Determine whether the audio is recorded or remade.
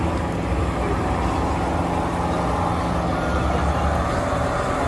recorded